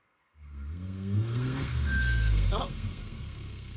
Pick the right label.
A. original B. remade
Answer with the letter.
B